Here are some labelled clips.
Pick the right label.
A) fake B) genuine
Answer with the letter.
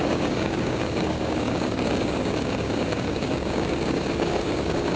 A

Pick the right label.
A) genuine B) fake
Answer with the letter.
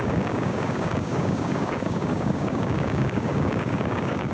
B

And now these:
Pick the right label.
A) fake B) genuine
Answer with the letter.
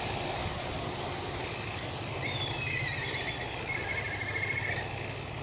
B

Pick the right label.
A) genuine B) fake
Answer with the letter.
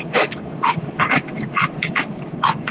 B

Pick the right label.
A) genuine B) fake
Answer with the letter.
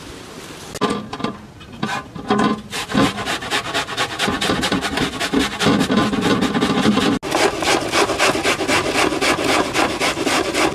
A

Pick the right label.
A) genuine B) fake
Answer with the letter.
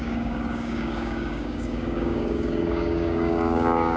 B